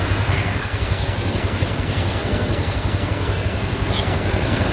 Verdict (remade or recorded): remade